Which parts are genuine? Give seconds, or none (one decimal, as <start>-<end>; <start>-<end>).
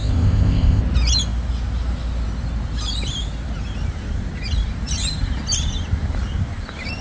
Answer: 0.8-7.0